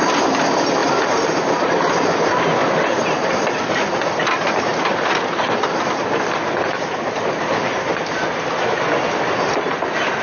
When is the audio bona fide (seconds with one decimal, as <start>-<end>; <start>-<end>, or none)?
0.0-0.8; 1.7-2.6; 3.4-10.2